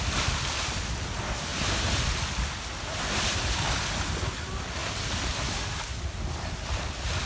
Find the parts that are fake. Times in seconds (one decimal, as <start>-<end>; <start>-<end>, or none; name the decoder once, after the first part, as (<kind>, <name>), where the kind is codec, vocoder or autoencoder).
none